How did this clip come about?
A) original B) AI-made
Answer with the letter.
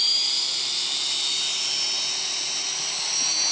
A